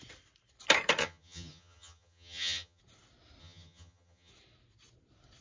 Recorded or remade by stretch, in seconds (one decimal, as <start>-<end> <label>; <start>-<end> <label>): 0.0-1.0 recorded; 1.0-2.8 remade; 2.8-3.4 recorded; 3.4-4.3 remade; 4.3-5.4 recorded